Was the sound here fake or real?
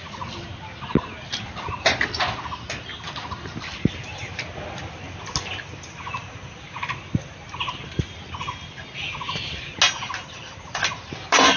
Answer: real